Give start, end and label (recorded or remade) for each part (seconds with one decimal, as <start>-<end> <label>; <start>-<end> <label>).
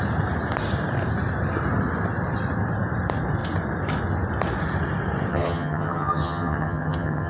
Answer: 0.0-5.3 recorded; 5.3-7.3 remade